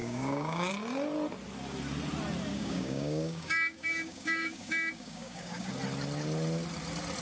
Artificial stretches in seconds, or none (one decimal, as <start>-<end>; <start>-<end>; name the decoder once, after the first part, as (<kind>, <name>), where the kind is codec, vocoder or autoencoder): 0.0-0.7 (codec, DAC); 2.5-5.7